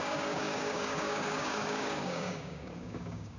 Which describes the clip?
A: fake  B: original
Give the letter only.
A